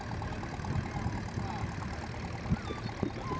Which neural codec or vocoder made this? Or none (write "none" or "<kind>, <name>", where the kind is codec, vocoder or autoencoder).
none